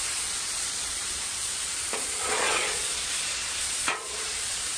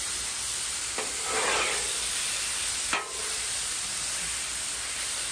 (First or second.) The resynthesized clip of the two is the first